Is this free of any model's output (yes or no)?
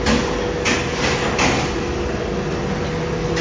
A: yes